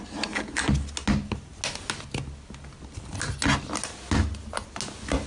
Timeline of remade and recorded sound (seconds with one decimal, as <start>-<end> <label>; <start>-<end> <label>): 0.0-5.3 recorded